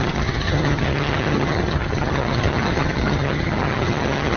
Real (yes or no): no